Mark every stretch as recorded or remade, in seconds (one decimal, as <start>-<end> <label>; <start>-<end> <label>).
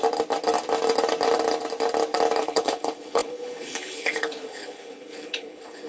0.0-2.4 recorded; 2.4-5.9 remade